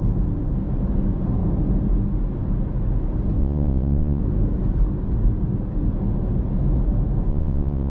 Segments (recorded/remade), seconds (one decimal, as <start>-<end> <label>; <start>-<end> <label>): 0.0-3.4 recorded; 3.4-4.2 remade; 4.2-7.3 recorded; 7.3-7.9 remade